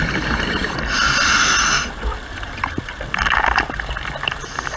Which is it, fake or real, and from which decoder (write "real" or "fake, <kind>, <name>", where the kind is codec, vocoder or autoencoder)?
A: real